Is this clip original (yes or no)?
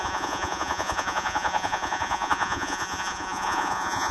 no